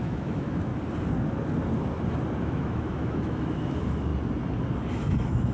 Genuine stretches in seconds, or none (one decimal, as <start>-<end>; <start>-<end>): 0.7-2.4; 4.1-4.9

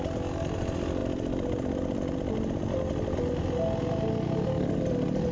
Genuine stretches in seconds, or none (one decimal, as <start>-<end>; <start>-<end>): 0.0-5.3

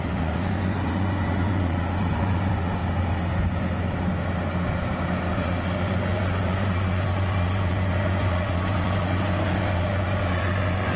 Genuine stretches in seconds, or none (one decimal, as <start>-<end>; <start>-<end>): 2.8-5.3

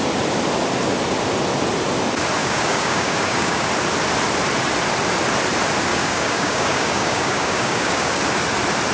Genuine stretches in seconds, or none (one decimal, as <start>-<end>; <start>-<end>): 0.0-2.4; 3.7-5.9; 8.2-8.9

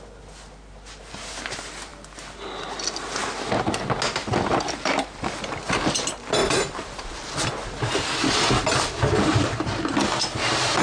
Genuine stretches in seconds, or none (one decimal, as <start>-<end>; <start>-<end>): 0.0-4.2; 5.6-6.4; 7.1-10.8

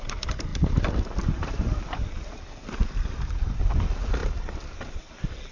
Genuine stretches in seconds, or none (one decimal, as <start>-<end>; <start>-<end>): 0.0-0.5; 2.1-4.2; 5.1-5.5

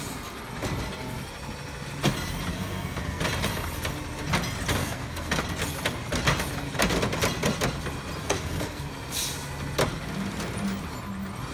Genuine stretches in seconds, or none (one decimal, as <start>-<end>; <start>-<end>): 0.0-2.5; 3.2-4.8; 5.4-8.2; 8.9-11.5